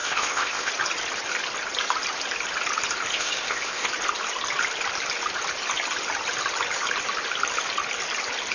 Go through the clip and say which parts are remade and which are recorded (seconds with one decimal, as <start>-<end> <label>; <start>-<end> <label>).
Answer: 0.0-0.7 remade; 0.7-3.1 recorded; 3.1-3.9 remade; 3.9-8.5 recorded